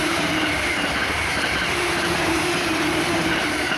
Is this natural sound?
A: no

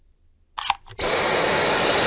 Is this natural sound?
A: yes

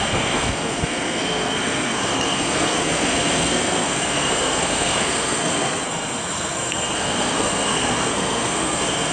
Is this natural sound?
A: no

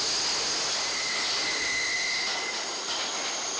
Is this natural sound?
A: yes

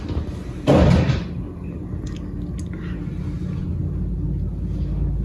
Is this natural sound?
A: yes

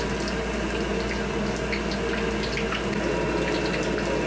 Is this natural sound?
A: yes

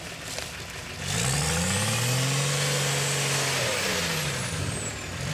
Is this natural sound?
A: yes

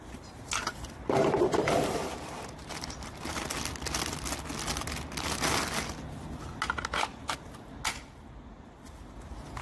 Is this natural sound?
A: yes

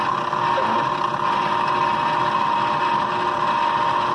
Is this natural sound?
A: yes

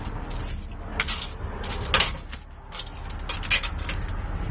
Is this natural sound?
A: yes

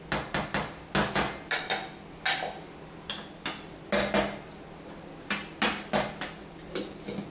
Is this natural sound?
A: yes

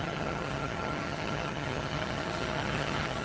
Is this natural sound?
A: no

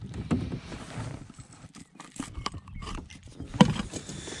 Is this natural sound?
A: no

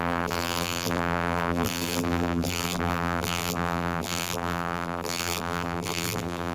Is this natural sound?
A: no